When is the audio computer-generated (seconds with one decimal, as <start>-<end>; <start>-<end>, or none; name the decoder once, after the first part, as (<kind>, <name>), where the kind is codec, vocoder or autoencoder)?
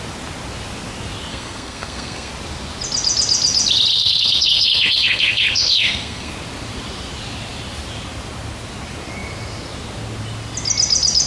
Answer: 1.3-2.3 (codec, SNAC); 3.9-6.3